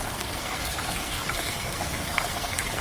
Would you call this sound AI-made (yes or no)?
yes